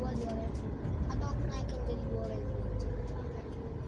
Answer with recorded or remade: recorded